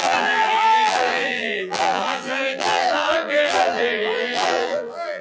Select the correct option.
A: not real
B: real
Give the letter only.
A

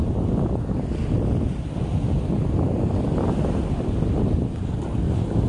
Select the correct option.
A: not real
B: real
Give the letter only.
B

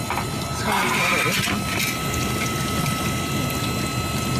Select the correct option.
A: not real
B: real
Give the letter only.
B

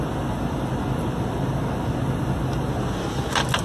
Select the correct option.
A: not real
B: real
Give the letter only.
B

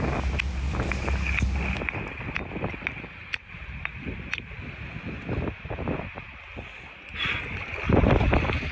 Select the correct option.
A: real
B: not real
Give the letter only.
A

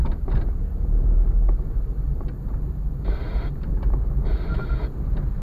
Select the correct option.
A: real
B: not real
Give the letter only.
B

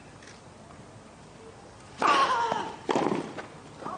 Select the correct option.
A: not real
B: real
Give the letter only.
A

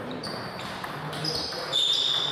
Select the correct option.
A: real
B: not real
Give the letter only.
B